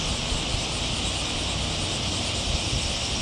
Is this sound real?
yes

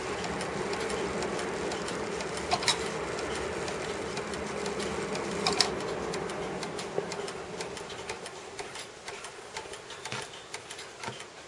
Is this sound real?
yes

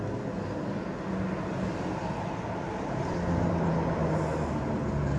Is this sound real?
yes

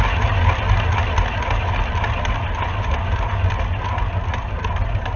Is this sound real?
yes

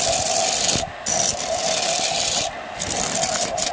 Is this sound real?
no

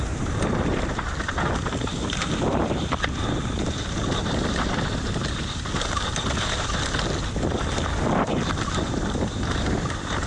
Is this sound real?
no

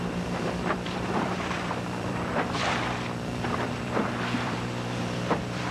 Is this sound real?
no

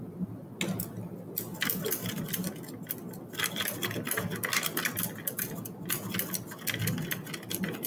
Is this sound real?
yes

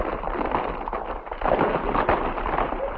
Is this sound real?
no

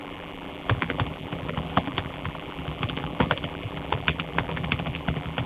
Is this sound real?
no